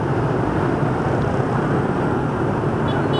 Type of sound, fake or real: real